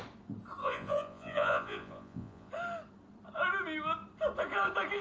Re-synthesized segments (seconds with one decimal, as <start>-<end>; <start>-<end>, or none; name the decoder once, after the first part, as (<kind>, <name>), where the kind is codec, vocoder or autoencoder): 0.6-2.5 (vocoder, Vocos)